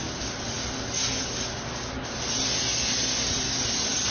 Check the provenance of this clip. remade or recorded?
recorded